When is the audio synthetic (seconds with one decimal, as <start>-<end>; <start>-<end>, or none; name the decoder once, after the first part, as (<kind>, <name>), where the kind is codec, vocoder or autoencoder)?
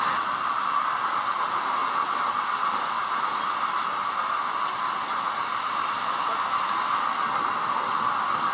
none